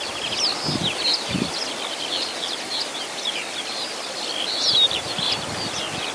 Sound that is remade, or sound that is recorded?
recorded